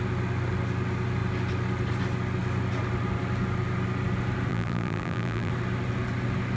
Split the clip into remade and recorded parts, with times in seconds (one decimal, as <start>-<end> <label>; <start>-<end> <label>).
0.0-4.5 recorded; 4.5-5.5 remade; 5.5-6.6 recorded